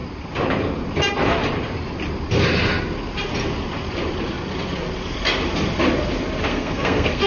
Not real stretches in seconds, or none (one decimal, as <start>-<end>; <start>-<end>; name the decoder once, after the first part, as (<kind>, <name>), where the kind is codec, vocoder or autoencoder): 6.5-7.3 (codec, SNAC)